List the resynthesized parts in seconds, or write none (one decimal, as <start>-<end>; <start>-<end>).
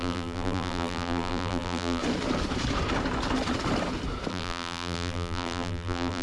0.0-2.0; 4.3-6.2